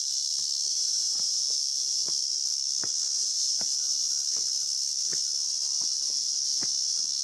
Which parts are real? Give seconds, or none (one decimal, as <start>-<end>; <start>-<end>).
0.0-0.7; 1.4-7.2